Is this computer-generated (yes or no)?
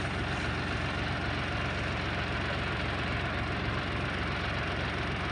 no